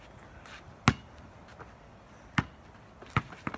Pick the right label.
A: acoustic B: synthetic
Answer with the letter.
A